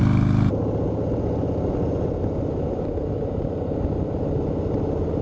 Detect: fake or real real